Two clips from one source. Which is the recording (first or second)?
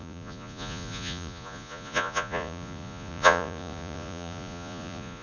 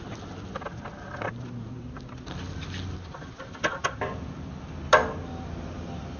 second